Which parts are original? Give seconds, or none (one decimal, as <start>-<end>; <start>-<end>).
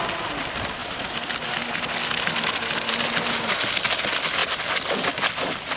0.0-5.8